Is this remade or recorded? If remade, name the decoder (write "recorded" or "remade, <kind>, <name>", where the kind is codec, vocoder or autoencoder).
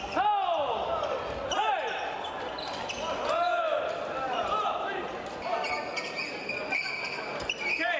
recorded